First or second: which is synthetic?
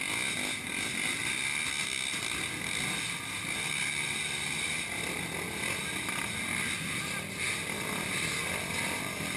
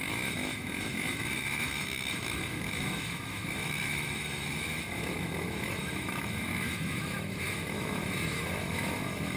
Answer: second